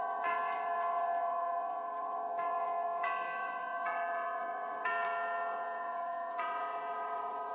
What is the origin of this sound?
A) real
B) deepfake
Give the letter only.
B